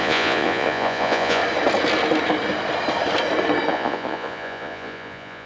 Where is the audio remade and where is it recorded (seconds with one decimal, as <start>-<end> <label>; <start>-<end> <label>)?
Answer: 0.0-1.4 remade; 1.4-3.7 recorded; 3.7-5.5 remade